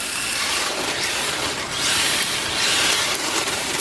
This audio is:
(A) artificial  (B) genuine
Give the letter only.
A